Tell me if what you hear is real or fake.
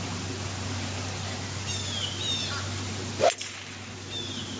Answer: real